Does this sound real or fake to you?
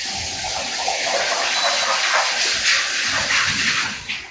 real